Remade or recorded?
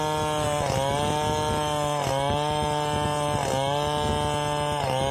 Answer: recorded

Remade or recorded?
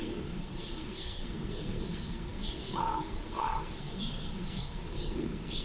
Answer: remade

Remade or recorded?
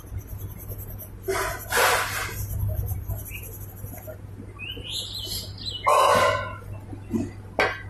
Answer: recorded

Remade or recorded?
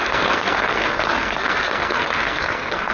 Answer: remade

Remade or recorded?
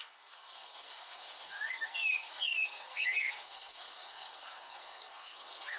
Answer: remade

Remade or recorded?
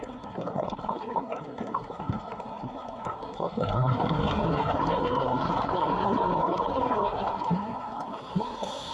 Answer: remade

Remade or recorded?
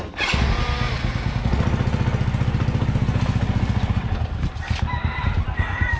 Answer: recorded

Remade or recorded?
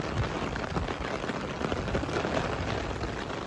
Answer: recorded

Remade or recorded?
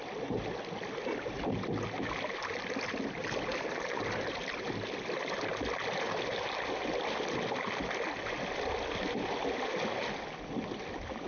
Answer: recorded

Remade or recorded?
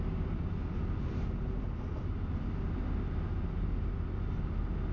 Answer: recorded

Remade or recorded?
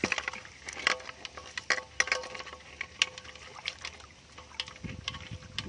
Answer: recorded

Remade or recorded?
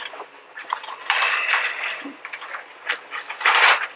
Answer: recorded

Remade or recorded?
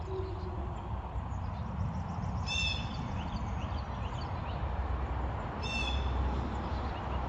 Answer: recorded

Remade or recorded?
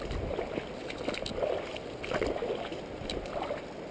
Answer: recorded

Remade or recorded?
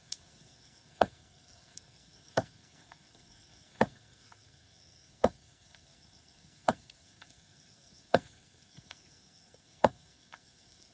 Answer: remade